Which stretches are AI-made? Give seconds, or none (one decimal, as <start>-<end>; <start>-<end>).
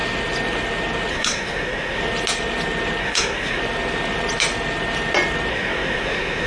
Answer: 1.1-2.0; 3.0-3.6; 5.5-6.5